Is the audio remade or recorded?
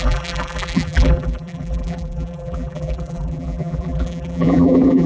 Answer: remade